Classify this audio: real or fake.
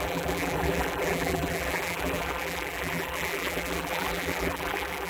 fake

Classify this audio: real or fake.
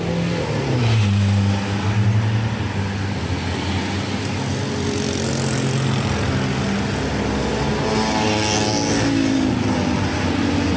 real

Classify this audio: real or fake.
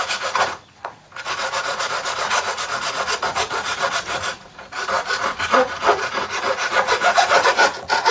fake